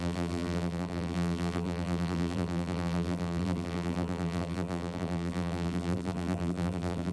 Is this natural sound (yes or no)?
no